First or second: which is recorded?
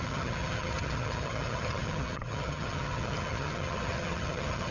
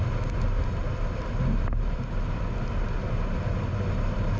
second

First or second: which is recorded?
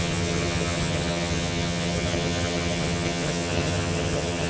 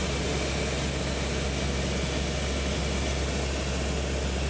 second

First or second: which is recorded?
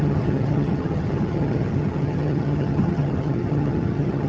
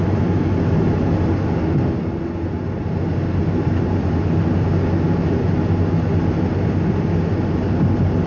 second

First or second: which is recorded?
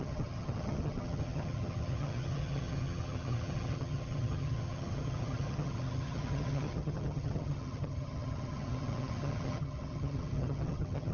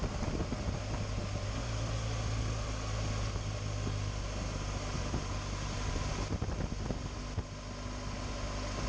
second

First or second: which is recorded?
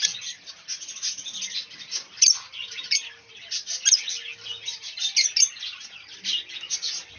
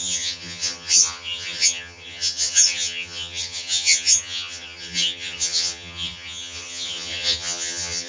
first